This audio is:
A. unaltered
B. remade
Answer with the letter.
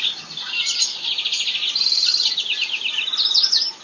B